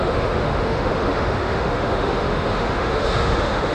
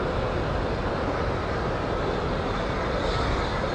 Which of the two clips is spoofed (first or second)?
first